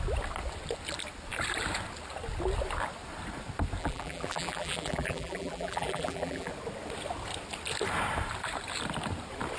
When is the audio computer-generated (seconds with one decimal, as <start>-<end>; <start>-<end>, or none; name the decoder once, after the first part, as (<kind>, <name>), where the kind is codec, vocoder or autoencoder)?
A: 3.8-6.5 (vocoder, BigVGAN v2)

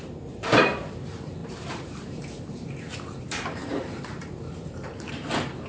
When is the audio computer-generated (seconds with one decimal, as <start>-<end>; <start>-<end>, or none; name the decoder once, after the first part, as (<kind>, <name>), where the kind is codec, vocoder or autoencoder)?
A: 0.0-5.7 (vocoder, BigVGAN v2)

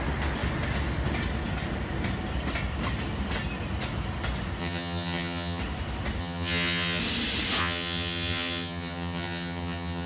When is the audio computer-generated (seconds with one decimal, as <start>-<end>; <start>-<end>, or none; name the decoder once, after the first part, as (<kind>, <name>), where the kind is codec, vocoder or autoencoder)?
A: 4.6-5.6 (vocoder, HiFi-GAN); 6.2-7.0; 7.6-10.1

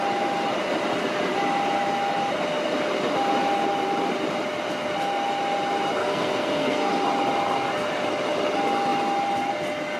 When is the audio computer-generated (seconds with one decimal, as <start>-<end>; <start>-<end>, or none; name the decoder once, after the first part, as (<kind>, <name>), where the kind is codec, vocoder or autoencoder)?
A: 6.0-6.9 (codec, SNAC)

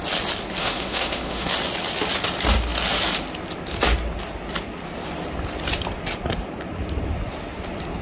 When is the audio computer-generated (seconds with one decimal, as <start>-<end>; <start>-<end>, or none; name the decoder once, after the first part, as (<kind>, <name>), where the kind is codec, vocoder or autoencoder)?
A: 0.6-1.5 (autoencoder, DAC-VAE)

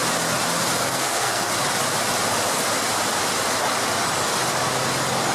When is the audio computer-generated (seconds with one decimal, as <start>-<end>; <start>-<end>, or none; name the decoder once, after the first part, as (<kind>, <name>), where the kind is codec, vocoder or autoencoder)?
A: 0.8-1.5 (codec, SNAC)